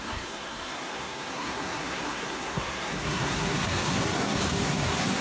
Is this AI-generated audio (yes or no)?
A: yes